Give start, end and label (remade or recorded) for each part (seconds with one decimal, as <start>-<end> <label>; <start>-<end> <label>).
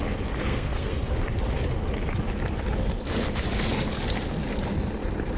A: 0.0-0.4 recorded; 0.4-1.0 remade; 1.0-5.4 recorded